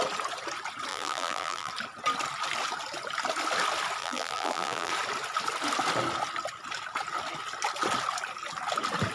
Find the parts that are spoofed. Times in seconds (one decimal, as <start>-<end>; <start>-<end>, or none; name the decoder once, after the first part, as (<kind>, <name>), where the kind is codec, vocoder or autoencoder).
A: 0.9-1.7 (vocoder, BigVGAN v2); 4.0-4.9